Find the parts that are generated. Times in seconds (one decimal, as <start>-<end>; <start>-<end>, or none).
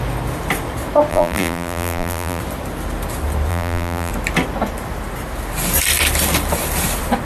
1.1-2.4; 3.5-4.1